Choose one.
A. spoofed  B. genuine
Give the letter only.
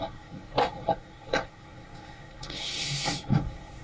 A